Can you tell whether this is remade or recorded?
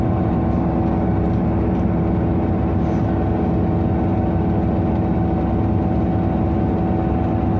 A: recorded